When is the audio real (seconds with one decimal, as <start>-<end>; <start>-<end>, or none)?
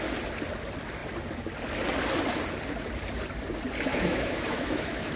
0.0-3.9